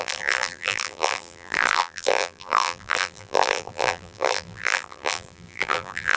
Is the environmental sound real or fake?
fake